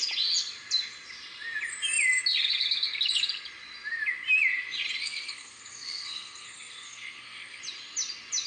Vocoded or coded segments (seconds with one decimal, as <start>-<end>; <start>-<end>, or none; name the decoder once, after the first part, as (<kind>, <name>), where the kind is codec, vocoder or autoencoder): 5.0-7.6 (codec, SNAC)